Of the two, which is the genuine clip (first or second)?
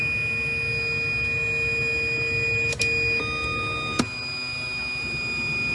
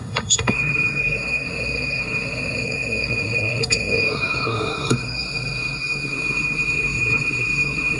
first